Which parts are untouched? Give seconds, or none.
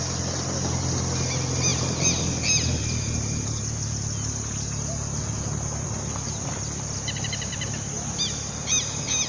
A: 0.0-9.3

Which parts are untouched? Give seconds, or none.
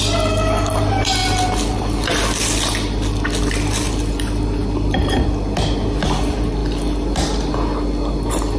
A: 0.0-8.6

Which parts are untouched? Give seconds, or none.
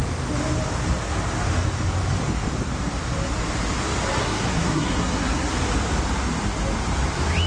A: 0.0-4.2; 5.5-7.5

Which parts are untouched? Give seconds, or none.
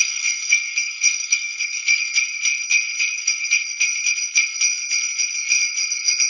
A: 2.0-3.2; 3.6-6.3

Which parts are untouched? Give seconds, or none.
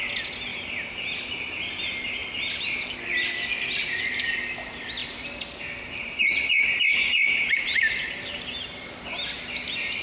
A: 0.0-0.5; 1.4-5.0; 9.0-10.0